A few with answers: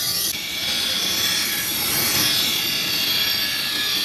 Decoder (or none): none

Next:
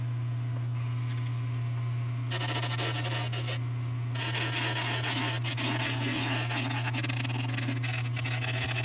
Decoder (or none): none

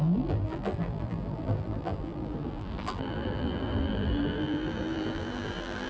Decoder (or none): vocoder, BigVGAN v2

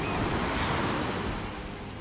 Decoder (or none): none